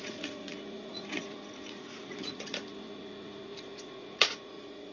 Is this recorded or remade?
remade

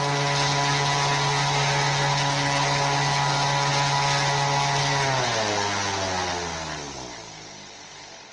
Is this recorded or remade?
recorded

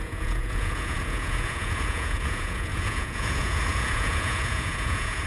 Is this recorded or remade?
remade